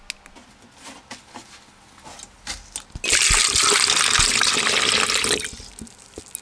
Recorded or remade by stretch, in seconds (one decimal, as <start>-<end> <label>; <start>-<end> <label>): 0.0-6.4 recorded